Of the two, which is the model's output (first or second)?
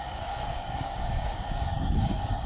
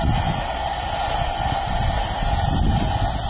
first